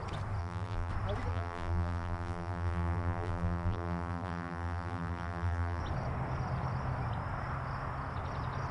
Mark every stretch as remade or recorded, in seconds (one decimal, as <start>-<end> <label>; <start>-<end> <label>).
0.0-0.4 recorded; 0.4-0.9 remade; 0.9-1.3 recorded; 1.3-5.8 remade; 5.8-8.7 recorded